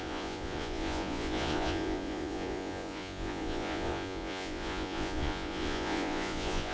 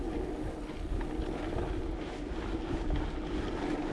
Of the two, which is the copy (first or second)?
first